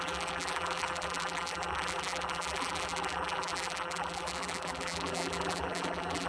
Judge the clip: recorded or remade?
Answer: remade